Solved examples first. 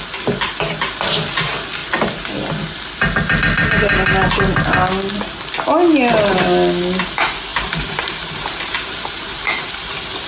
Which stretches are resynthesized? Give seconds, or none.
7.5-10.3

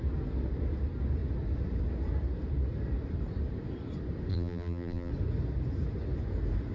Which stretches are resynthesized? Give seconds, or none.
4.3-5.1

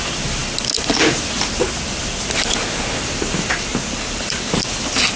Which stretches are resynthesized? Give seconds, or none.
3.7-4.5

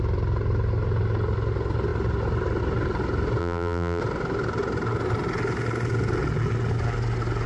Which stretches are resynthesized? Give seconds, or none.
3.4-4.0

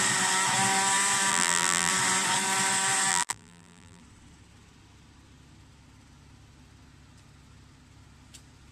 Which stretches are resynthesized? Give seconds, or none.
1.3-1.9; 3.1-4.0

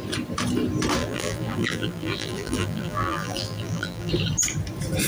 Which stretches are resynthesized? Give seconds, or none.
1.0-4.1

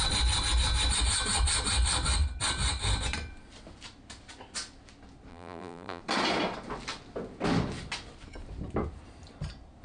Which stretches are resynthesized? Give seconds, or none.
5.3-6.0